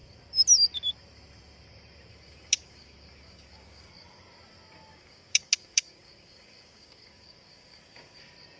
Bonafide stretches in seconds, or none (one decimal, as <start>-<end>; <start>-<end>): 0.0-2.1; 3.9-4.9; 8.2-8.6